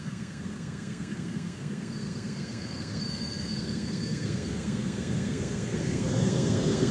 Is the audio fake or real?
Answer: fake